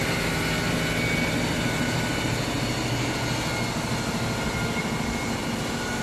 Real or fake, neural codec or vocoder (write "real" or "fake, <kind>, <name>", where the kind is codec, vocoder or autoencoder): real